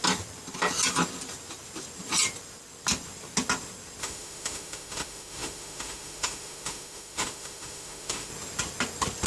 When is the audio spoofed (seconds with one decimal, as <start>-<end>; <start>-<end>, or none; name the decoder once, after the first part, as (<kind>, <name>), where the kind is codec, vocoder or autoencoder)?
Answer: 4.0-8.3 (autoencoder, DAC-VAE)